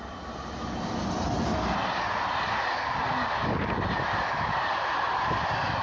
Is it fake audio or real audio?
real